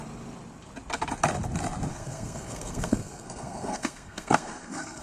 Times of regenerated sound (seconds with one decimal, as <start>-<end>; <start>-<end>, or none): 1.9-5.0